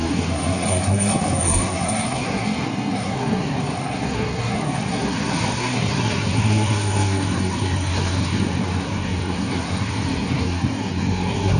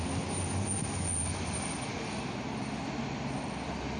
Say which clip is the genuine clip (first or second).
second